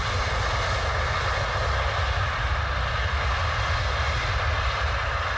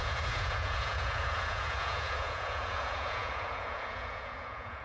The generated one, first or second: second